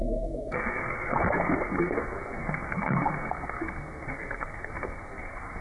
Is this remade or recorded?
remade